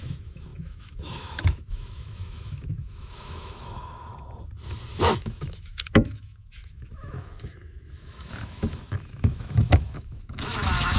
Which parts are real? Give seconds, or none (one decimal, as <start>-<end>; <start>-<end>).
4.1-4.9